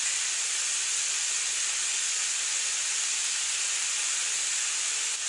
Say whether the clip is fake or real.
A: real